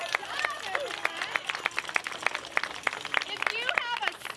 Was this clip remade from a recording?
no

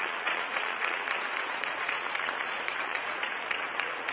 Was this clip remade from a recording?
yes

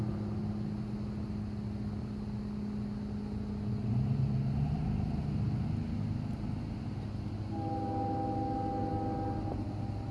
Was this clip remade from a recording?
no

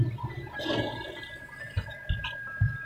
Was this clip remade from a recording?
no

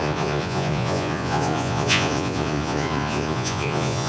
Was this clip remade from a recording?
yes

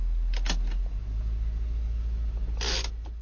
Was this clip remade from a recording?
no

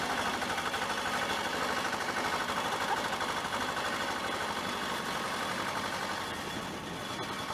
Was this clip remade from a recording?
no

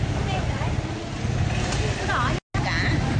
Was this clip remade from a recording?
no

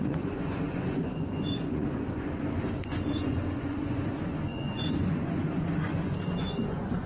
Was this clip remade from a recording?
yes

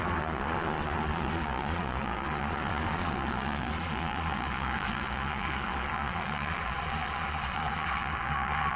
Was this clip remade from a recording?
yes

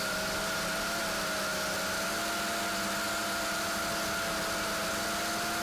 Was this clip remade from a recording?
no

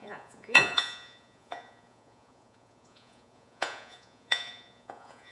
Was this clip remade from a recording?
yes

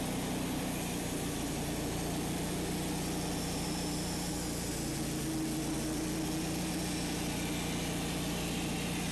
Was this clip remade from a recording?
no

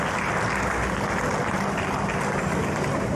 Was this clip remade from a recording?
no